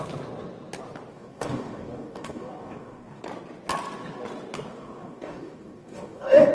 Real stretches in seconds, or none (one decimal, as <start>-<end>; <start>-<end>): 0.0-1.1; 3.2-4.7

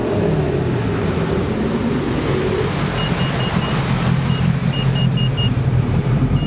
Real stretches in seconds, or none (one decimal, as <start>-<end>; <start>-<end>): 0.0-0.9; 1.8-3.4; 4.6-5.6